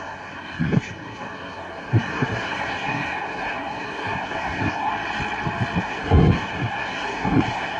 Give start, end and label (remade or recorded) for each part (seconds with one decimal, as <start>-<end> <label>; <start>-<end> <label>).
0.0-4.9 remade; 4.9-5.8 recorded; 5.8-7.8 remade